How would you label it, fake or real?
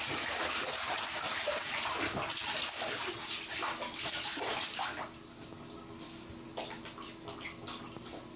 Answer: real